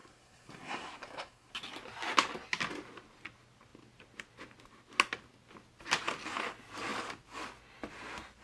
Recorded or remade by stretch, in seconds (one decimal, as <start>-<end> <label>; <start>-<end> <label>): 0.0-1.5 remade; 1.5-8.4 recorded